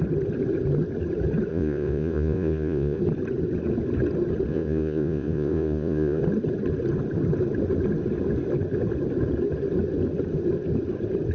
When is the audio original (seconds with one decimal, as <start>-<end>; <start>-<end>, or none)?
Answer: 0.0-1.5; 3.0-4.5; 6.2-11.3